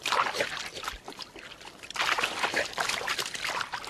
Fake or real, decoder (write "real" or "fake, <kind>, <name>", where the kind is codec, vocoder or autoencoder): fake, vocoder, BigVGAN v2